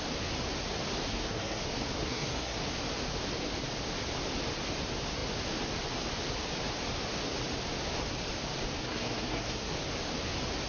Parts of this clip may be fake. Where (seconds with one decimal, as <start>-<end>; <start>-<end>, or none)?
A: 1.1-1.6; 2.0-2.6; 8.8-9.7